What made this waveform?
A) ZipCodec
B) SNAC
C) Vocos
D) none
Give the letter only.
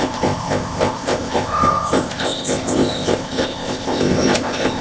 A